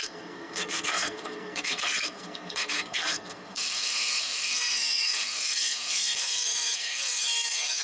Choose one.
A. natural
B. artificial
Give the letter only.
B